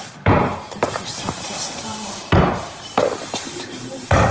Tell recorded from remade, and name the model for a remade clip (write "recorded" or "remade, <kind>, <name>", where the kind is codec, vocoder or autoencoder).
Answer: remade, vocoder, BigVGAN v2